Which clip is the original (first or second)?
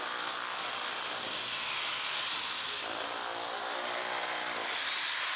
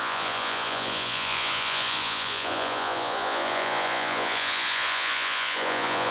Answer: first